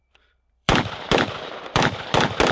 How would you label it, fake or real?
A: fake